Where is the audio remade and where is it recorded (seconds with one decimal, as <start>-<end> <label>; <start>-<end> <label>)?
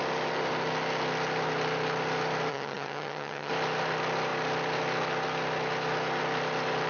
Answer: 0.0-2.5 recorded; 2.5-3.5 remade; 3.5-6.9 recorded